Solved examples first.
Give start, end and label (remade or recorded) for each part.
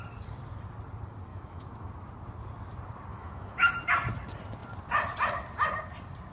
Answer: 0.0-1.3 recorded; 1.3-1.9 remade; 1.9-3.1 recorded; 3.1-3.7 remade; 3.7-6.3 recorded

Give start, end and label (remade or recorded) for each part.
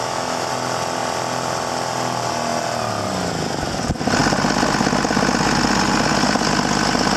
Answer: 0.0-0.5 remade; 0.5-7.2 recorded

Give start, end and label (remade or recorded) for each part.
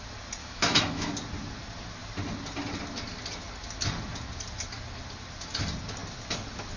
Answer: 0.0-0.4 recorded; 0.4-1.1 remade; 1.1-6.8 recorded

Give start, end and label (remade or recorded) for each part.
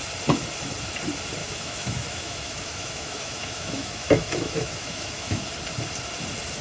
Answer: 0.0-1.4 recorded; 1.4-5.4 remade; 5.4-6.6 recorded